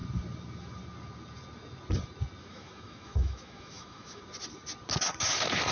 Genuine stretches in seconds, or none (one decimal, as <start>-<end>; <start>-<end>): 0.0-2.4; 4.2-5.7